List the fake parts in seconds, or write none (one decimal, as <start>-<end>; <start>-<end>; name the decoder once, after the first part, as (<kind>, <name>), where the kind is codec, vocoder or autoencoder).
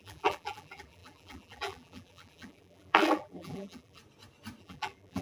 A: 0.0-4.0 (vocoder, BigVGAN v2); 4.6-5.2